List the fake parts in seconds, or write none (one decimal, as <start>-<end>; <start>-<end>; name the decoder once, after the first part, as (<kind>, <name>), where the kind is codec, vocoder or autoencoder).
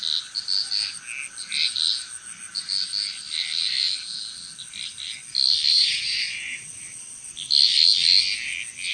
5.7-7.3 (vocoder, Vocos)